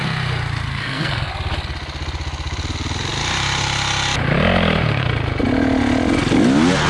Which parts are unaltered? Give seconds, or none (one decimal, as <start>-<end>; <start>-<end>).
0.0-0.7; 1.3-6.9